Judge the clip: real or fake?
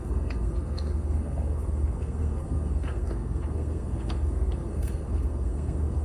fake